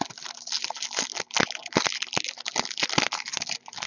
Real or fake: real